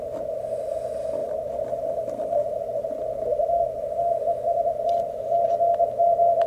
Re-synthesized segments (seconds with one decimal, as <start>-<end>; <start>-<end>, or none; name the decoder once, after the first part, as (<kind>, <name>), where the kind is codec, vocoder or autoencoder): none